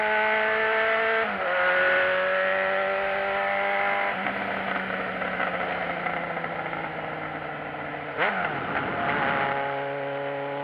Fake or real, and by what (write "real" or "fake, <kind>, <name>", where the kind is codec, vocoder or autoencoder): real